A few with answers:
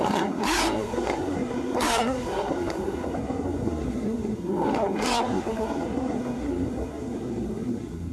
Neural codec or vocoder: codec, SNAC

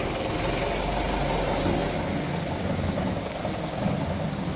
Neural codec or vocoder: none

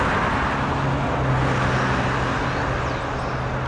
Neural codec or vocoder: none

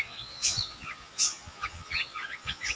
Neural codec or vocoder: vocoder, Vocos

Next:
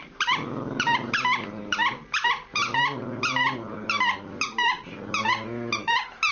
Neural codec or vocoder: none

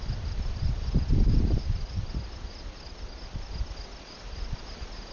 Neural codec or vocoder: none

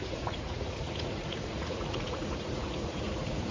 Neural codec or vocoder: vocoder, Vocos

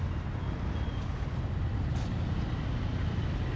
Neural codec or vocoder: none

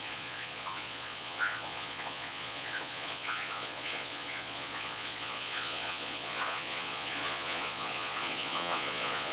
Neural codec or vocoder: vocoder, Vocos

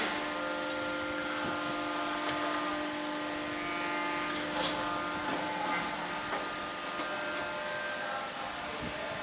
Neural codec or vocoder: none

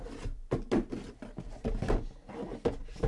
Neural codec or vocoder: none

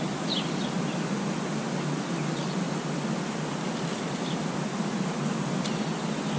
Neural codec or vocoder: none